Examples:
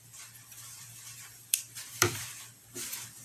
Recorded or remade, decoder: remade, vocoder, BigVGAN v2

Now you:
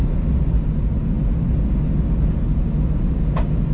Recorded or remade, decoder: recorded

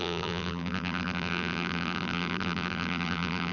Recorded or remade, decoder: remade, vocoder, BigVGAN v2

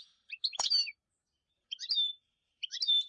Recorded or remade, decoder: remade, vocoder, BigVGAN v2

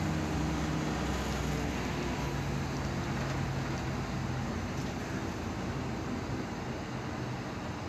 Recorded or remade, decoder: recorded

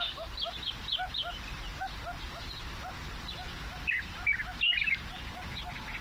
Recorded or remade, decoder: recorded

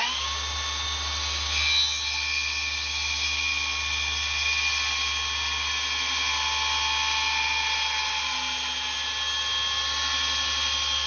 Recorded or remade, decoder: recorded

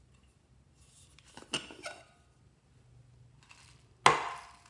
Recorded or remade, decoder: recorded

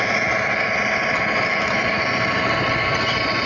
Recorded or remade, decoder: remade, vocoder, BigVGAN v2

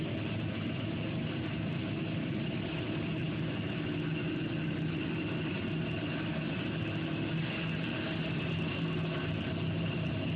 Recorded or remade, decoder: recorded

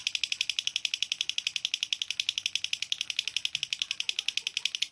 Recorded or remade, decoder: recorded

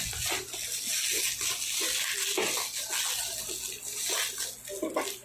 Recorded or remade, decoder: recorded